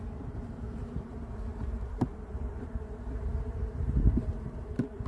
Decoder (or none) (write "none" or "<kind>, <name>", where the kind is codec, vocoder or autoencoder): vocoder, BigVGAN v2